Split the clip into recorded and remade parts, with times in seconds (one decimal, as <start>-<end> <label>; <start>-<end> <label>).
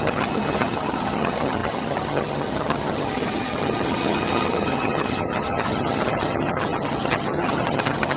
0.0-8.2 remade